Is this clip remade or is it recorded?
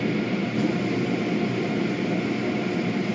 recorded